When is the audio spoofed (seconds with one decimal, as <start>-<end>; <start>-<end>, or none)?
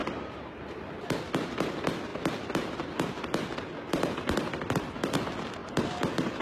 0.0-1.1; 5.6-6.4